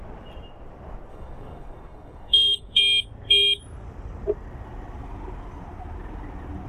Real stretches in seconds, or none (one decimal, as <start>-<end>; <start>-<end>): 0.0-1.1; 2.8-6.7